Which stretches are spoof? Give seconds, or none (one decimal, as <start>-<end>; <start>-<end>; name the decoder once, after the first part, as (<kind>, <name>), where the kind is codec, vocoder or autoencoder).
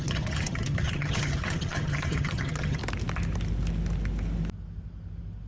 0.0-2.8 (vocoder, HiFi-GAN)